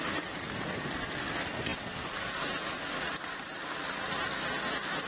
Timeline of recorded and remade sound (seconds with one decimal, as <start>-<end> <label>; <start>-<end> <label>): 0.0-5.1 recorded